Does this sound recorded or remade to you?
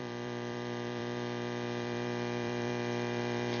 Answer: remade